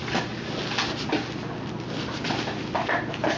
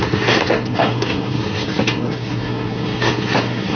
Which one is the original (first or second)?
first